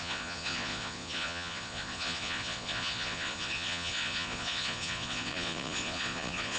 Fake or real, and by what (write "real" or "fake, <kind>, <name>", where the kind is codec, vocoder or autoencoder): fake, vocoder, Vocos